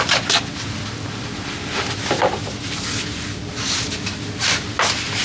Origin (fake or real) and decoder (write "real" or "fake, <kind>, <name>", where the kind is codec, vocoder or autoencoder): real